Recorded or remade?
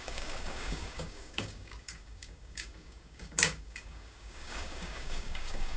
remade